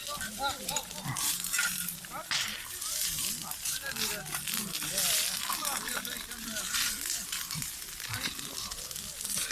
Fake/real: real